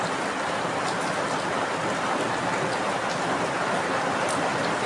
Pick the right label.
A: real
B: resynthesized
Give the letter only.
A